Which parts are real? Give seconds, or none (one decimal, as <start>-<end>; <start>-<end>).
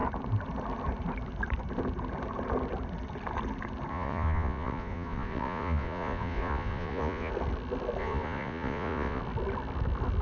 0.0-3.9; 7.3-8.0; 9.2-10.2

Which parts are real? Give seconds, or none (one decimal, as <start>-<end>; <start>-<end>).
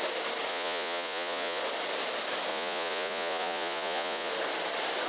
0.0-0.5; 1.6-2.5; 4.3-5.1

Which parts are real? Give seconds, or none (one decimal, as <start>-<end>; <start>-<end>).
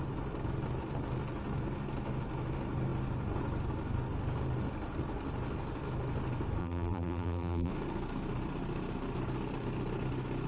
0.0-6.6; 7.7-10.5